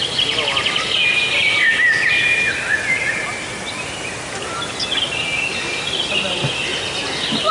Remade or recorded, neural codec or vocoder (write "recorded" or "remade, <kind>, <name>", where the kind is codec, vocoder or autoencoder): recorded